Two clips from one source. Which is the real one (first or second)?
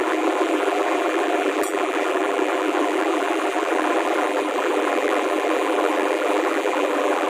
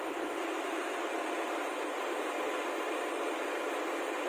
second